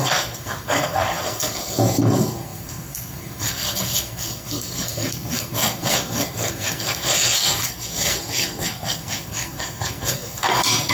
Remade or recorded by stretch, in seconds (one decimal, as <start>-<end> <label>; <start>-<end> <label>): 0.0-10.9 remade